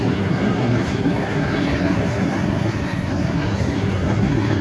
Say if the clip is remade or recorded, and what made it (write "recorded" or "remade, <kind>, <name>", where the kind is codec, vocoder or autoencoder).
remade, codec, SNAC